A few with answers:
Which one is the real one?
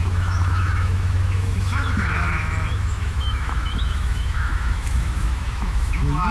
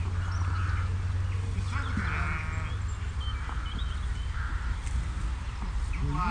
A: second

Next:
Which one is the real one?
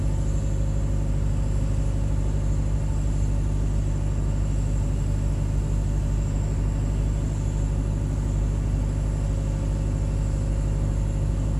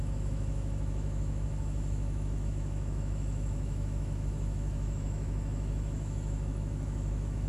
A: first